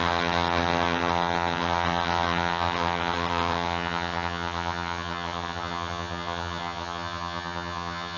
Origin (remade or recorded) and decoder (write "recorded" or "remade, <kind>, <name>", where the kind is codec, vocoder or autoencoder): remade, vocoder, HiFi-GAN